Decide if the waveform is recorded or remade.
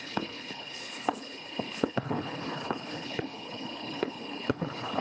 remade